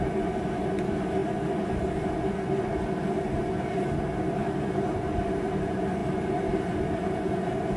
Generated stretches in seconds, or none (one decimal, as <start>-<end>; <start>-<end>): none